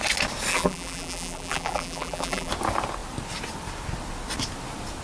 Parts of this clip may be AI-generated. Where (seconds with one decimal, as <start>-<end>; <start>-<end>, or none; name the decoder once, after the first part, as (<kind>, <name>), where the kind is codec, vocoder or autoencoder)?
0.5-2.5 (vocoder, BigVGAN v2)